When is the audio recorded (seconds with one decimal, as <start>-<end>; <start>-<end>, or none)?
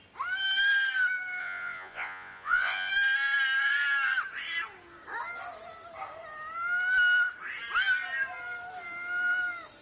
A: 0.0-1.4; 2.9-9.8